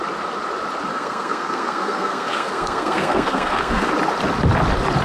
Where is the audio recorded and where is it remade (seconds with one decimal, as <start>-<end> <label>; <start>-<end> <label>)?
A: 0.0-0.9 recorded; 0.9-3.9 remade; 3.9-5.0 recorded